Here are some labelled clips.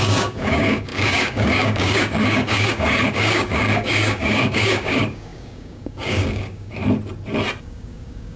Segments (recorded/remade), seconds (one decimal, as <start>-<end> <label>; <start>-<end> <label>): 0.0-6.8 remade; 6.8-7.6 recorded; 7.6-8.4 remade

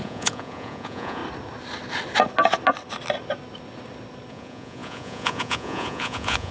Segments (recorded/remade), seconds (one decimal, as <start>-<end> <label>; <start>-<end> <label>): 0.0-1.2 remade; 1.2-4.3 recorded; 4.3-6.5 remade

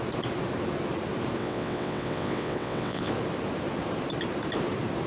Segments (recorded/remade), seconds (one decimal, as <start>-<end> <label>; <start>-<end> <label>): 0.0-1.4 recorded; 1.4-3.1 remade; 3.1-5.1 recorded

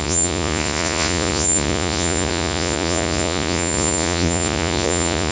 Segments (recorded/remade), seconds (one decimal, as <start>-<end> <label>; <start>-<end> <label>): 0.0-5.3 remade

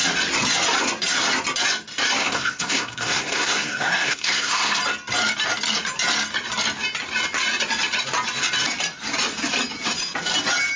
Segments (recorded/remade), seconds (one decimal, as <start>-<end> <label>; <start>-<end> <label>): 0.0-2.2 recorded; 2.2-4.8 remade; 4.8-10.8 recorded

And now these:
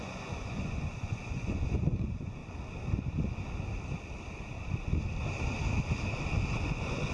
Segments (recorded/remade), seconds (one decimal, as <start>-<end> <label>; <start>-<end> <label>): 0.0-2.4 remade; 2.4-6.6 recorded; 6.6-7.1 remade

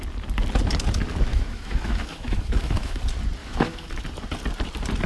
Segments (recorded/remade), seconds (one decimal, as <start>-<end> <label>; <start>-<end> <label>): 0.0-1.3 recorded; 1.3-3.0 remade; 3.0-3.4 recorded; 3.4-4.0 remade; 4.0-5.1 recorded

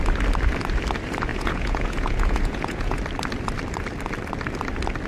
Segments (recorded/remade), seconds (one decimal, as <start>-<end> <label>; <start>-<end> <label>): 0.0-1.3 recorded; 1.3-3.0 remade; 3.0-5.1 recorded